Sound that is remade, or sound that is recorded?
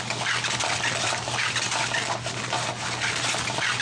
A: recorded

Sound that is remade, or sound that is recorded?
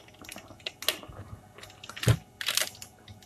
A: recorded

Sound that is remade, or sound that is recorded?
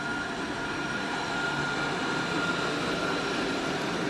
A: recorded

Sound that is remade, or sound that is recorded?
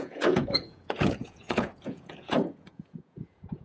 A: remade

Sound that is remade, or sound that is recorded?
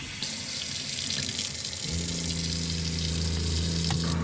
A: recorded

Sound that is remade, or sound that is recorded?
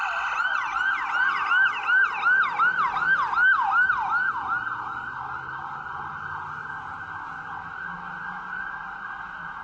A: recorded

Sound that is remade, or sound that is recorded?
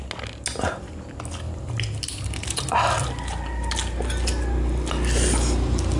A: recorded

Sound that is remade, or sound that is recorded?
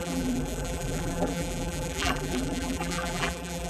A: remade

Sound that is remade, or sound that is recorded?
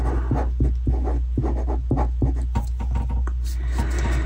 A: recorded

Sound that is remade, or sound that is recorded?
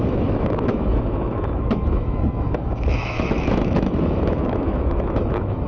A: remade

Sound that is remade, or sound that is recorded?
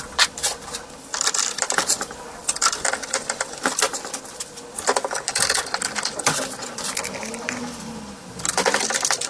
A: remade